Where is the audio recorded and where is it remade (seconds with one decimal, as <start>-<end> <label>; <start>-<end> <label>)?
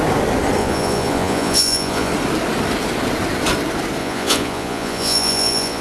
0.0-0.6 recorded; 0.6-2.1 remade; 2.1-4.0 recorded; 4.0-5.8 remade